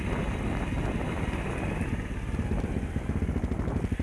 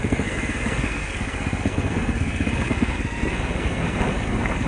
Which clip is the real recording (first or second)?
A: first